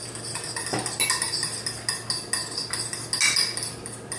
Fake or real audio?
real